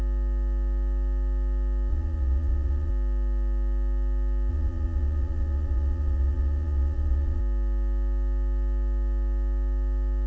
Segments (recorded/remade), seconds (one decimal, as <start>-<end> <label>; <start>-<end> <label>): 0.0-1.9 recorded; 1.9-2.9 remade; 2.9-4.5 recorded; 4.5-7.4 remade; 7.4-10.3 recorded